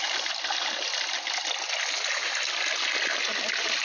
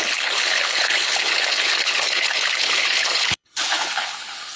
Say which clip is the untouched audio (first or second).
first